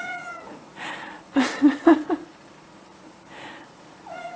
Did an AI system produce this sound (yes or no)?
yes